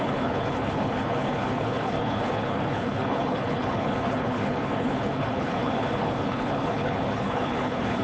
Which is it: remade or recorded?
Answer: remade